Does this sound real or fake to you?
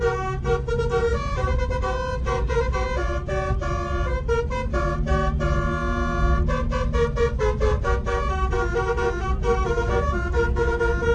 real